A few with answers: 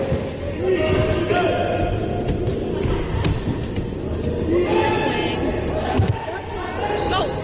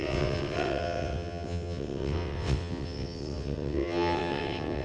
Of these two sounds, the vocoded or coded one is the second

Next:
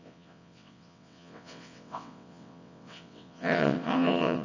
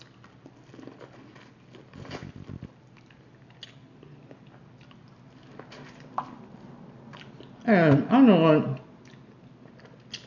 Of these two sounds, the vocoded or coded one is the first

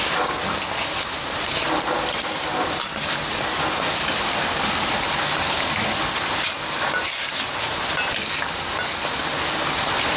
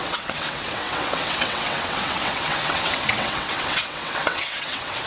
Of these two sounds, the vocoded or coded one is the second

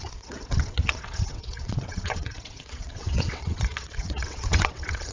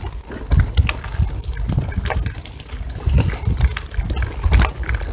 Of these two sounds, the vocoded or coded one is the first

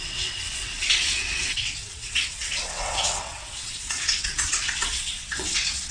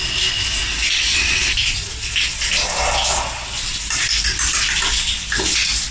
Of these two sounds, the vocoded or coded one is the first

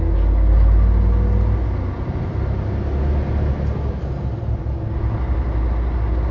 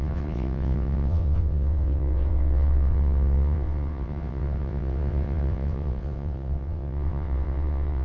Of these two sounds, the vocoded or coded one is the second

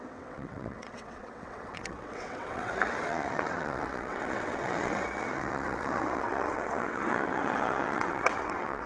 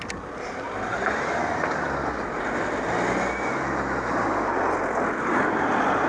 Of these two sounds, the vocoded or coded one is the first